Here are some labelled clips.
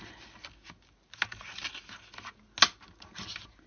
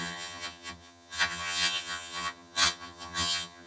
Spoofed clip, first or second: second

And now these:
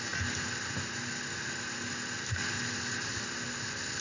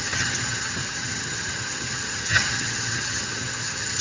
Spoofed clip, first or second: second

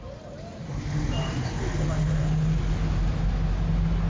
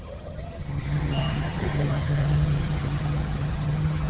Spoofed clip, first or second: second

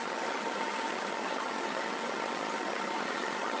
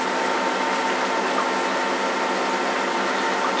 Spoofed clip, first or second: first